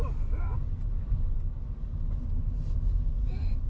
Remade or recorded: recorded